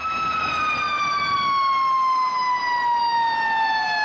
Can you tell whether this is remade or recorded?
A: recorded